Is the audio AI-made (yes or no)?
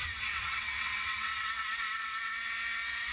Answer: yes